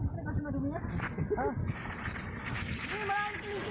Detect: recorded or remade recorded